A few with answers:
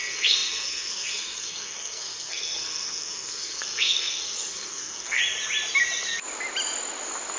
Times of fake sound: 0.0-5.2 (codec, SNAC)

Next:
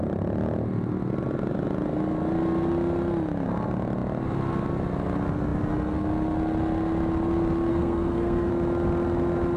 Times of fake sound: 7.7-8.5 (codec, SNAC)